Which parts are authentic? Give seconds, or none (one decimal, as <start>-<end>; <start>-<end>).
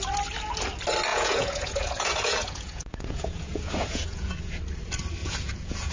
0.0-1.1; 4.6-5.2